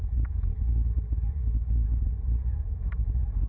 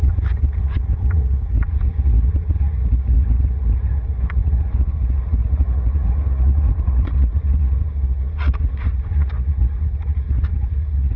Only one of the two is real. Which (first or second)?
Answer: first